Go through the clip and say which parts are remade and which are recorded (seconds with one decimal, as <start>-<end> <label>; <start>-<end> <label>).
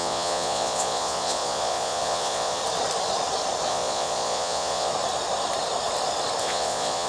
0.0-2.6 remade; 2.6-3.7 recorded; 3.7-4.9 remade; 4.9-6.4 recorded; 6.4-7.1 remade